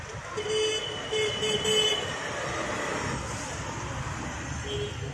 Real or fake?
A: real